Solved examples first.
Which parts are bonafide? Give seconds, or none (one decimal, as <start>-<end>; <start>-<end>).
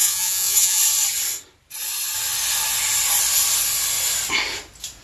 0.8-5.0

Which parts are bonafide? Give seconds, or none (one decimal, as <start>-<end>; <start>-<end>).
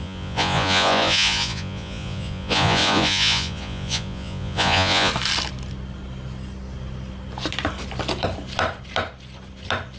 5.1-10.0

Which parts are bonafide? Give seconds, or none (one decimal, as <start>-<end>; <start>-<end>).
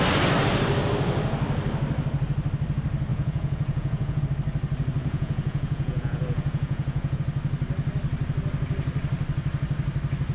0.0-3.1; 4.2-5.0; 7.2-10.3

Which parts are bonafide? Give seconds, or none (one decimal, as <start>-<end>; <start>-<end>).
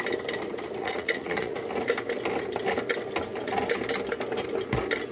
0.0-0.8; 1.6-5.1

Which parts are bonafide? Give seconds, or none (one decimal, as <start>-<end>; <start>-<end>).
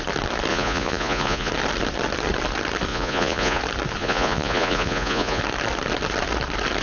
0.0-0.5; 1.5-2.9; 3.6-4.0; 5.4-6.8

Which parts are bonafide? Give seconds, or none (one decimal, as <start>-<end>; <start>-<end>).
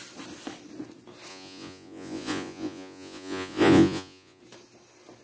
0.0-1.3; 4.4-5.2